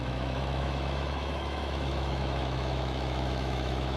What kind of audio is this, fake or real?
fake